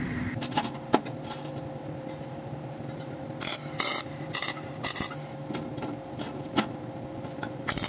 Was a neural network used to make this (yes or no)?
yes